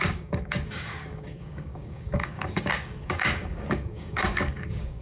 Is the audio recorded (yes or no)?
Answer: no